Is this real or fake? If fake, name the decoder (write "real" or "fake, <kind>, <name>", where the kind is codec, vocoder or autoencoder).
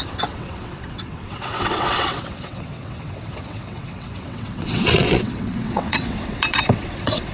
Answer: fake, vocoder, WaveNeXt